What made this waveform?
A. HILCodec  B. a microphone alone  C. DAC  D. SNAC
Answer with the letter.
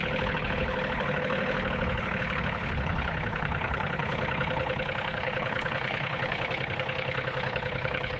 A